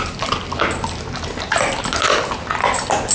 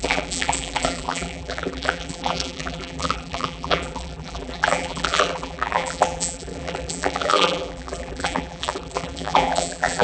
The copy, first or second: second